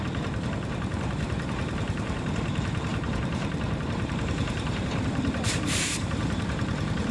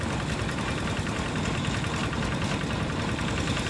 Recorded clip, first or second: second